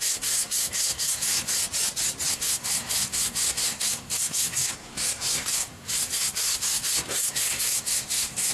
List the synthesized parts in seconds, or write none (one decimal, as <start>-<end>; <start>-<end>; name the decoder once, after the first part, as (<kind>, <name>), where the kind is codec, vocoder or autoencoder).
0.0-1.6 (codec, SNAC); 2.3-8.5